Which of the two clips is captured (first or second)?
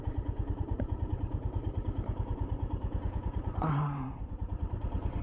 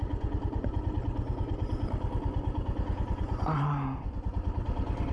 second